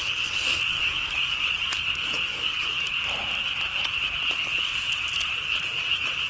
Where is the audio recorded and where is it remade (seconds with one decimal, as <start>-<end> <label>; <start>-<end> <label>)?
0.0-0.7 recorded; 0.7-1.9 remade; 1.9-2.3 recorded; 2.3-2.9 remade; 2.9-6.3 recorded